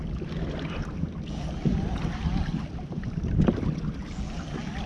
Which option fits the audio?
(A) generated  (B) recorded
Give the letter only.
B